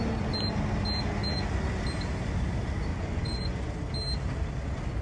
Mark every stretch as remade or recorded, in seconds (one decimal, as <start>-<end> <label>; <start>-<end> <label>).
0.0-2.9 recorded; 2.9-3.7 remade; 3.7-5.0 recorded